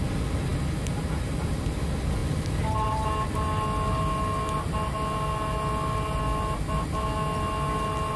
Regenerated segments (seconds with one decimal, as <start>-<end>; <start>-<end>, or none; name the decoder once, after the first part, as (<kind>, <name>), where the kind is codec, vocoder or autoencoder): none